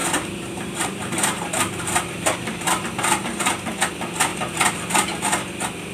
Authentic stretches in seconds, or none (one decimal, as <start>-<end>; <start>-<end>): 3.5-4.3; 5.1-5.9